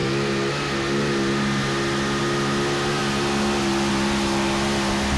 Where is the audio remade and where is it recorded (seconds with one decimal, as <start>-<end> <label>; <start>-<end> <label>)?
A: 0.0-5.2 recorded